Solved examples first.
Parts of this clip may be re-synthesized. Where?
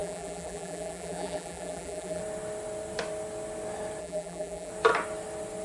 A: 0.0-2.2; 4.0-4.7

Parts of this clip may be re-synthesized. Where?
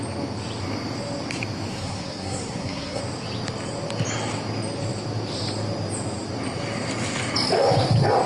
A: 1.7-3.0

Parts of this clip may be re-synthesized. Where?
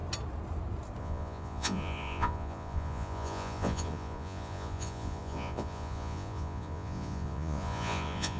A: 1.0-8.4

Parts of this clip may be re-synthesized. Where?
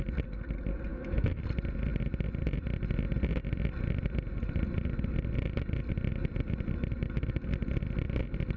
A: 0.9-1.4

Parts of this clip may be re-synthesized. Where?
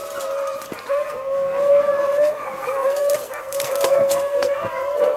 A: 0.9-5.2